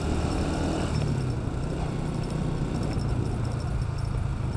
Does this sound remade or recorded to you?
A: recorded